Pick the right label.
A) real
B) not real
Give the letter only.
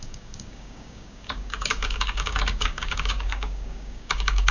B